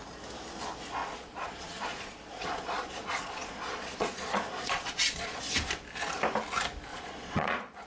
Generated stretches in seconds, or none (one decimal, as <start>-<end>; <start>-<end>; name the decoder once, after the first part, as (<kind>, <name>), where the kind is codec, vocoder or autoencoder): 1.0-5.4 (vocoder, Vocos); 6.9-7.9